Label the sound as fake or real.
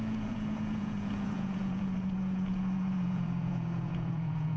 fake